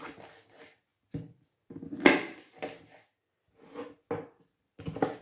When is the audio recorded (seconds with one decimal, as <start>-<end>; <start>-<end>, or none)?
0.0-5.2